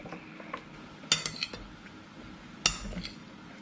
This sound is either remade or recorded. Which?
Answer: recorded